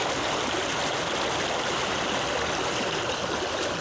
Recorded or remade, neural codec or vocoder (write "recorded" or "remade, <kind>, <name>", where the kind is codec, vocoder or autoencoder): recorded